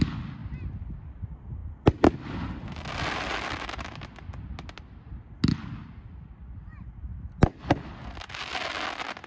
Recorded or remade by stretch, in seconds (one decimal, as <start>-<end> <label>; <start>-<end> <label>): 0.0-9.3 recorded